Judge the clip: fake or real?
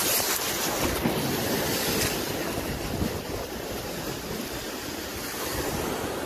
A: real